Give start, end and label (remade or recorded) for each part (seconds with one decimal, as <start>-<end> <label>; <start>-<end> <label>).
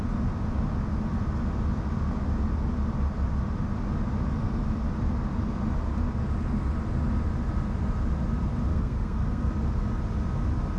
0.0-8.7 recorded; 8.7-9.5 remade; 9.5-10.8 recorded